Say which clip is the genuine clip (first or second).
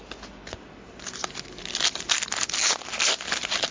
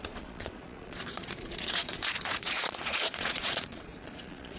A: first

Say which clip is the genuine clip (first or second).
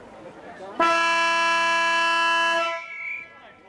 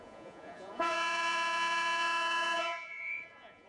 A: first